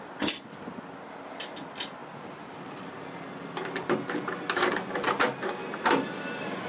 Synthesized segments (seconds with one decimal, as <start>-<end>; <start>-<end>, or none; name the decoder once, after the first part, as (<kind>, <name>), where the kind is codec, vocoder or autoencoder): none